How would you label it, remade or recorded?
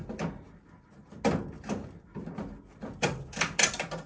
recorded